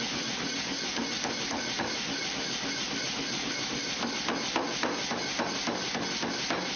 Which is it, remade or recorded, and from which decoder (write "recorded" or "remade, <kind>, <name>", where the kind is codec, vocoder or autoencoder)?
recorded